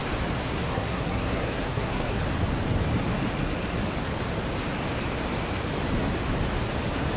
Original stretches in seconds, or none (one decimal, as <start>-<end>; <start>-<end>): 0.0-0.4; 2.2-7.2